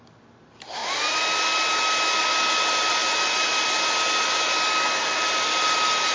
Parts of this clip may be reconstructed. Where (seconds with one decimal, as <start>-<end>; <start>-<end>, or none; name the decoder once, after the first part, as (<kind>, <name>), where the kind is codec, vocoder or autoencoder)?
0.0-0.8 (vocoder, BigVGAN v2); 2.2-3.0; 5.0-6.1